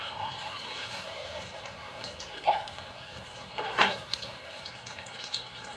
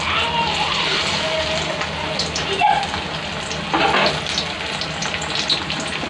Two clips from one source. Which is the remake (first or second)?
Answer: first